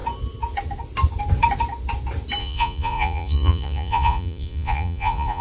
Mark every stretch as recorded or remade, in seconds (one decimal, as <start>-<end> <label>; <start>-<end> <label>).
0.0-2.4 recorded; 2.4-5.4 remade